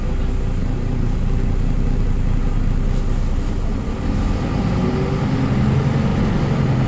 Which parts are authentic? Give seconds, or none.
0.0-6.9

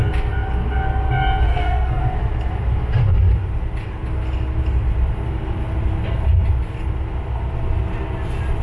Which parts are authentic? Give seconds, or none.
0.0-1.5; 2.0-8.6

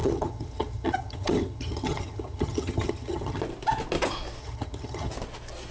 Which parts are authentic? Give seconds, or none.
3.4-4.4; 5.1-5.7

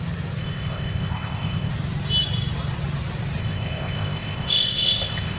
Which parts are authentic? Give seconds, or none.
0.0-0.4; 1.7-3.4